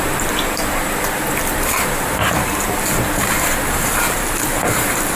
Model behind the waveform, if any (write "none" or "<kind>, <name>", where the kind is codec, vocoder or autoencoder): vocoder, BigVGAN v2